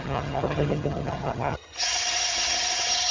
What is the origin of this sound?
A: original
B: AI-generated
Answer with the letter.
B